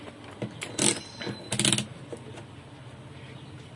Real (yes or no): yes